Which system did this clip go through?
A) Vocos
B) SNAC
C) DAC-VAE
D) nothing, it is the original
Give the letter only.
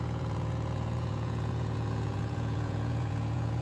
A